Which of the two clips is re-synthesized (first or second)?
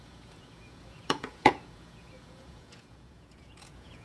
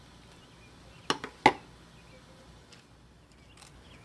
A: first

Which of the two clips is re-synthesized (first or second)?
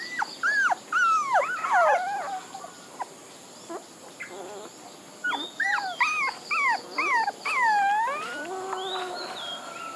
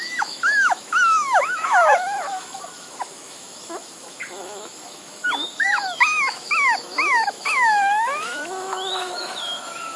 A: second